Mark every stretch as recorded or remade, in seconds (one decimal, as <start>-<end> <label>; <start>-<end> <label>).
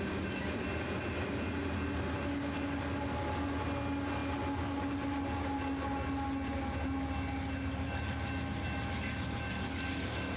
0.0-10.4 recorded